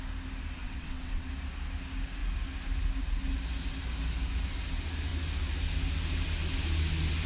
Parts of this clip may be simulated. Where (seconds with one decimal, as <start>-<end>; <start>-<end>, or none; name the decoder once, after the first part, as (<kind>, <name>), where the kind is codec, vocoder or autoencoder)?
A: 0.6-1.3 (vocoder, WaveNeXt)